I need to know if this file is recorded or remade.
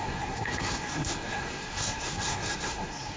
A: remade